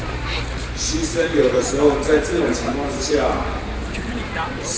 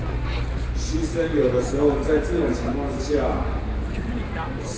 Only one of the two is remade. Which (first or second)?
first